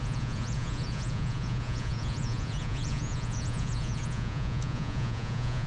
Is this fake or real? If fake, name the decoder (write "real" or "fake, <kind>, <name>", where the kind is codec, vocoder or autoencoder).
fake, vocoder, Vocos